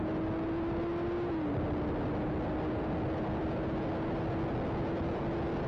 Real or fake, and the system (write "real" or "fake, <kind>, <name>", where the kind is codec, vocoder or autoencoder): real